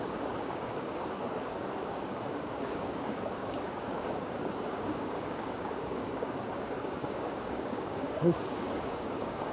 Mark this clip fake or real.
fake